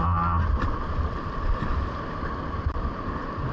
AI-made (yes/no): no